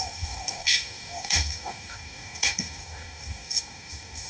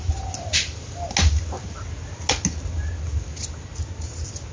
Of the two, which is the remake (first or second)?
first